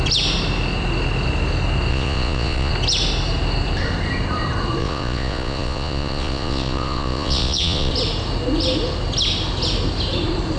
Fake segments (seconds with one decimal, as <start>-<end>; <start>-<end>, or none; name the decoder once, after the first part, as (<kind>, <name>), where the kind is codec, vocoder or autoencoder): 1.9-2.7 (vocoder, Vocos); 4.8-7.9

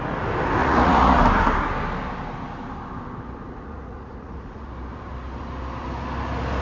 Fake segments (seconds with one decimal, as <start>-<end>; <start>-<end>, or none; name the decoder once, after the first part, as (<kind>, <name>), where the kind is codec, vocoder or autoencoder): 0.6-1.2 (vocoder, Vocos); 3.4-4.7

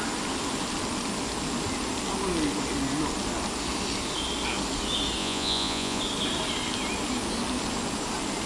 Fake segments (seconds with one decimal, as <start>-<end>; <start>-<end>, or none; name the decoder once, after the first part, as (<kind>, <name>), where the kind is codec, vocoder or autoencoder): 5.2-6.0 (vocoder, Vocos)

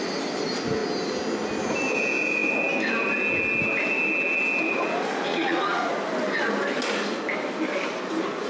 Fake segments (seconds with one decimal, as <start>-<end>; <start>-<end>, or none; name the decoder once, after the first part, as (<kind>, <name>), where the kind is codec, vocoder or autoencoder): 5.3-5.9 (vocoder, Vocos)

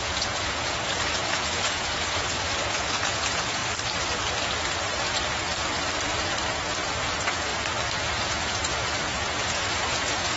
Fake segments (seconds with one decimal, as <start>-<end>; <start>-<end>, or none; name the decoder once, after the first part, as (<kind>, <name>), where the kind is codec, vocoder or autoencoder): 0.0-3.6 (vocoder, Vocos); 7.0-7.5; 8.1-10.4

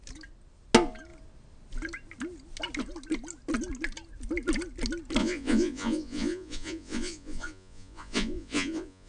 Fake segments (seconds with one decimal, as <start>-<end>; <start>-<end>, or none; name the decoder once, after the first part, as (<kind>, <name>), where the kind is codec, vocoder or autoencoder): 5.2-9.1 (vocoder, Vocos)

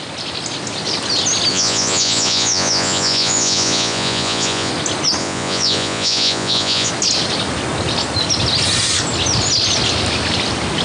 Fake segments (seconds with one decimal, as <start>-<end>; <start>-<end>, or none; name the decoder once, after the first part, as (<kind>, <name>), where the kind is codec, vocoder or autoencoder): 1.5-4.7 (vocoder, Vocos); 5.2-6.9

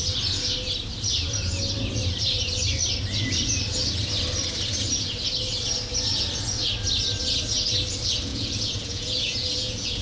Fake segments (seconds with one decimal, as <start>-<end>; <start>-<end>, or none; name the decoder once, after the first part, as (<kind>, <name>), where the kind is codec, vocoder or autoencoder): 8.3-10.0 (vocoder, Vocos)